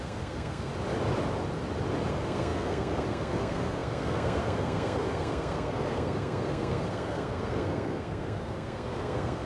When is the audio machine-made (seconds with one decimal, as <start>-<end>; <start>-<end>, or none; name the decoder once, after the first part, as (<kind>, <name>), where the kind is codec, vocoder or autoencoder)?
0.0-0.7 (codec, SNAC); 2.1-9.5

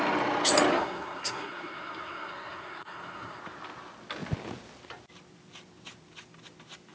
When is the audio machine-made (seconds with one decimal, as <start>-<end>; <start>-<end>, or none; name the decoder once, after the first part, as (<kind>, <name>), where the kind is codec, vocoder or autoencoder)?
0.7-3.4 (codec, SNAC)

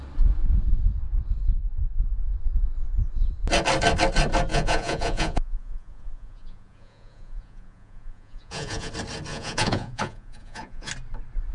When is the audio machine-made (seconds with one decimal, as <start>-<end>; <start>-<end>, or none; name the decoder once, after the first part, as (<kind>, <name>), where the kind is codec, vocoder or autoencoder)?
1.5-2.0 (vocoder, Vocos); 4.5-8.9; 9.3-10.9

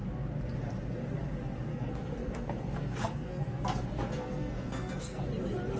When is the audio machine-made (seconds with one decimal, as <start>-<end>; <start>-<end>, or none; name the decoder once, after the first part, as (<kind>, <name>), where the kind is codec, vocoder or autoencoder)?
1.7-5.2 (codec, SNAC)

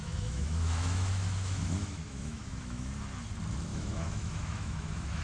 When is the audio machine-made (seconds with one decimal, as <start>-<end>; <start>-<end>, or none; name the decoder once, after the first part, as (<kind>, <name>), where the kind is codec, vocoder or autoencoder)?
0.0-2.9 (autoencoder, DAC-VAE); 3.7-5.2

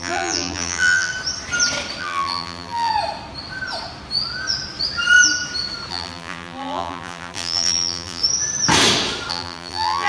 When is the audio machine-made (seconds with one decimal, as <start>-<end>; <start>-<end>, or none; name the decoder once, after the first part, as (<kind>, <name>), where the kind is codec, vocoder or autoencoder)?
0.0-1.1 (vocoder, BigVGAN v2); 2.0-2.9; 5.9-8.2; 9.3-10.1

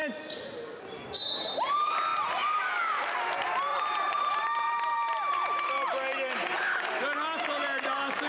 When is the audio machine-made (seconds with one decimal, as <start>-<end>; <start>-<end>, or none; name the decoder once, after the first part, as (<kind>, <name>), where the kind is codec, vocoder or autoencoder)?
3.7-5.7 (vocoder, BigVGAN v2)